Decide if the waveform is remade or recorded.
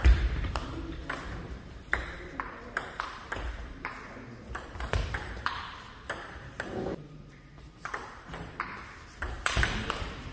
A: remade